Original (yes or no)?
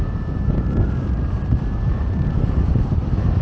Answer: yes